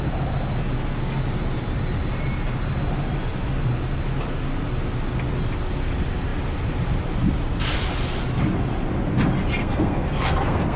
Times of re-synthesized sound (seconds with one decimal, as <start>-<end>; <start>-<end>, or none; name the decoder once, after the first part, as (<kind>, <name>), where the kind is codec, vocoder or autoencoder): 9.6-10.8 (codec, SNAC)